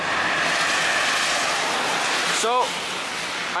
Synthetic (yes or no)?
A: no